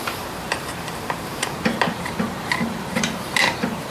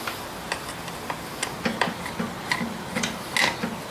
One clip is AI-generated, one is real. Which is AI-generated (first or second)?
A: first